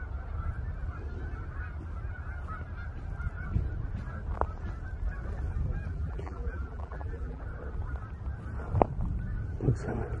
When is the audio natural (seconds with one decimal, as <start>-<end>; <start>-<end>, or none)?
0.0-5.9; 7.4-10.2